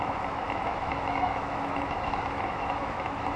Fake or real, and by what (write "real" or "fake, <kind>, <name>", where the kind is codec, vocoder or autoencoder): fake, autoencoder, DAC-VAE